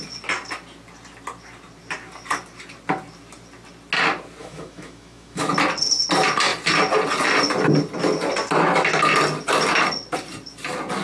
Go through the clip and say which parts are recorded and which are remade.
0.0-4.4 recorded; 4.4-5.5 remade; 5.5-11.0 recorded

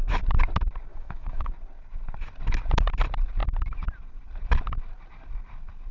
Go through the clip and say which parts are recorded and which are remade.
0.0-0.9 recorded; 0.9-1.5 remade; 1.5-5.9 recorded

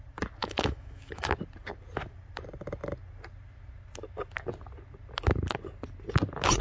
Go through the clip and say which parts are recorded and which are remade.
0.0-0.4 recorded; 0.4-1.3 remade; 1.3-6.6 recorded

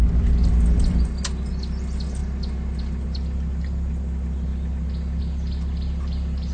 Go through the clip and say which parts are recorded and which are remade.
0.0-6.5 recorded

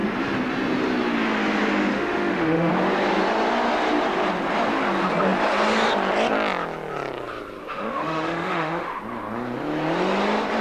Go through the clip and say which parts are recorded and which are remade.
0.0-1.9 recorded; 1.9-2.7 remade; 2.7-7.6 recorded; 7.6-9.0 remade; 9.0-10.6 recorded

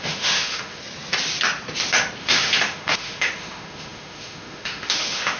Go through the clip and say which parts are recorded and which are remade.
0.0-0.8 remade; 0.8-2.2 recorded; 2.2-5.4 remade

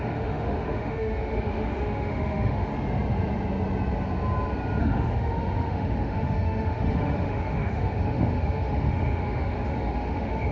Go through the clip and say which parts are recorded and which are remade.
0.0-2.7 remade; 2.7-4.8 recorded; 4.8-10.5 remade